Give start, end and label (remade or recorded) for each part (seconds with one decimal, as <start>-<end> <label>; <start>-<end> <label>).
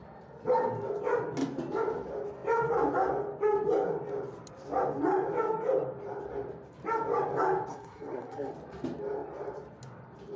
0.0-7.7 recorded; 7.7-8.5 remade; 8.5-10.4 recorded